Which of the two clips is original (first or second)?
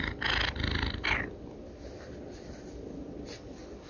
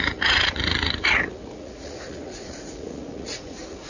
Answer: first